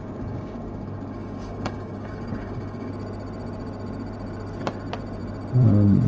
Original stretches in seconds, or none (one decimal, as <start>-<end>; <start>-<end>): 2.9-6.1

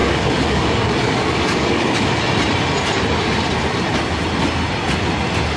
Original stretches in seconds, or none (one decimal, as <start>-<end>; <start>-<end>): 2.2-5.6

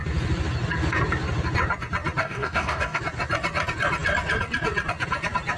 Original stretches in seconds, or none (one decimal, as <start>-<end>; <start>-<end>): 0.0-2.2; 3.0-5.6

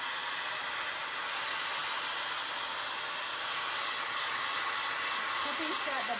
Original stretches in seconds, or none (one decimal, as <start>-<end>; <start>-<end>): 0.0-6.2

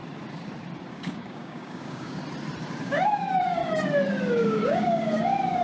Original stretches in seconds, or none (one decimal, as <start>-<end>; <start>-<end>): 0.0-0.9; 2.2-2.8; 3.6-4.3